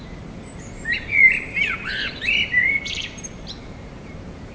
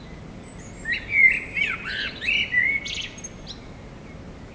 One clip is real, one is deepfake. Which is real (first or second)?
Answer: second